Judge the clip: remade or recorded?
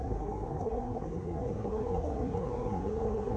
remade